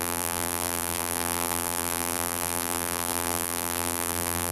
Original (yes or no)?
no